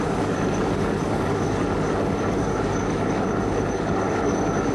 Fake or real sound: fake